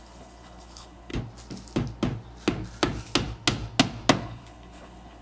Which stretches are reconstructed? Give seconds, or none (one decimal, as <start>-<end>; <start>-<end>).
0.0-1.1; 4.2-5.2